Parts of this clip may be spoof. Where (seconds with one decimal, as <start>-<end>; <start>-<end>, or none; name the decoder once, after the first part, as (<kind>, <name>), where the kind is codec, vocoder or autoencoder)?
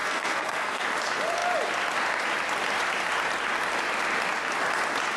0.0-0.8 (codec, SNAC)